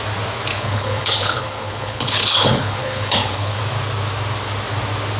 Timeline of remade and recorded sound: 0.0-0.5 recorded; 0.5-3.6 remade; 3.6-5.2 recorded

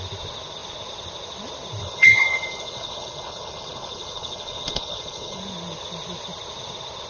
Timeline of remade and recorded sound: 0.0-1.8 recorded; 1.8-5.4 remade; 5.4-7.1 recorded

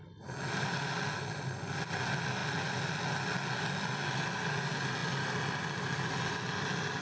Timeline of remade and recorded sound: 0.0-7.0 recorded

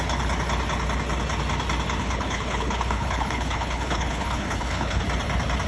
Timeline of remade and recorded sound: 0.0-2.0 recorded; 2.0-5.0 remade; 5.0-5.7 recorded